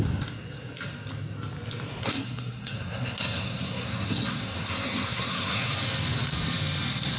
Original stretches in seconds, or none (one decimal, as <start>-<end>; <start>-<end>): 0.0-2.0; 5.7-7.2